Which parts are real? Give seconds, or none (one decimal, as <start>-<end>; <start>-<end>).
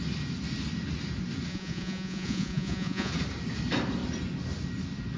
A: 0.0-1.5; 3.1-5.2